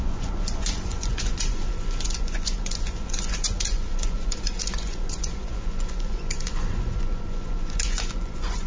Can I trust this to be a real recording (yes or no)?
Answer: no